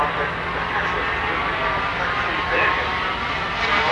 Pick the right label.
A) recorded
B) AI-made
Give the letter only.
A